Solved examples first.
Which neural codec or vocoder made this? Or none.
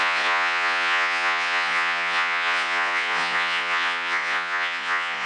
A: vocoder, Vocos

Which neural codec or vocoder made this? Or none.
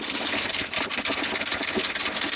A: none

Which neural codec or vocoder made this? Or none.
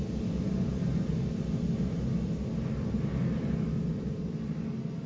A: none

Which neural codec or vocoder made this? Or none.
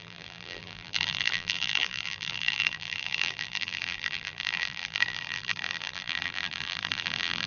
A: vocoder, BigVGAN v2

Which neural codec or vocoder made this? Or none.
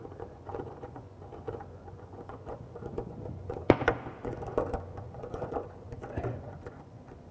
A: vocoder, Vocos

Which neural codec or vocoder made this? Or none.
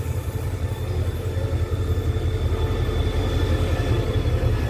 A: none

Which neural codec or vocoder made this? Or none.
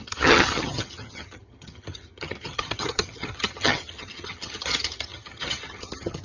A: vocoder, HiFi-GAN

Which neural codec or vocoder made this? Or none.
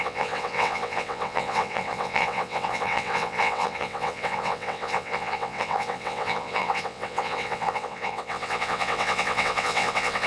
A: vocoder, WaveNeXt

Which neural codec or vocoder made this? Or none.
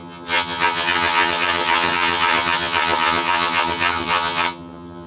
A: vocoder, HiFi-GAN